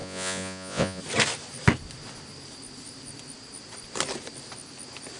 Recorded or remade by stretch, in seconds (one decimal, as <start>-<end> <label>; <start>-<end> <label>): 0.0-1.0 remade; 1.0-5.2 recorded